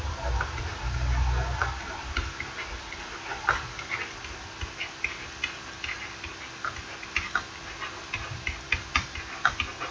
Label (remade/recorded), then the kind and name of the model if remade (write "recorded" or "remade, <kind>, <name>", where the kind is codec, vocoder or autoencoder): recorded